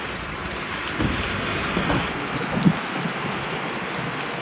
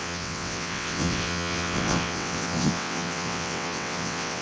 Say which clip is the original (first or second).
first